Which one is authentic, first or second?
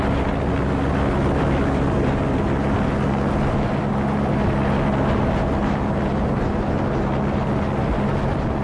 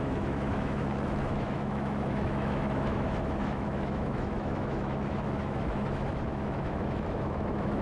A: first